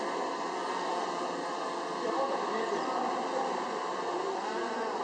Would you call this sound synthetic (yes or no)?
no